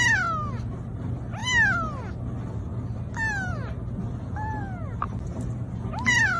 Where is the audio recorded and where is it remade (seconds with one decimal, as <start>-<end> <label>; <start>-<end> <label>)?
0.0-6.4 recorded